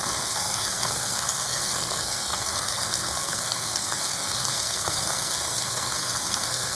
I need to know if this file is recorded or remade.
remade